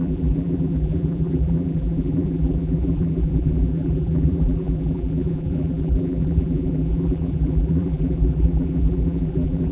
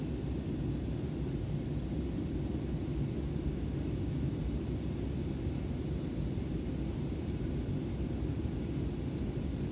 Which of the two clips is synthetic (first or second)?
first